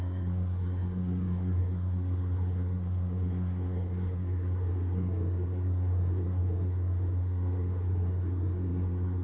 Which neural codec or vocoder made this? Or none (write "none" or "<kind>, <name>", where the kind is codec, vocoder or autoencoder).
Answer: codec, SNAC